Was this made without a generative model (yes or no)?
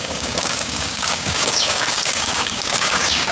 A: no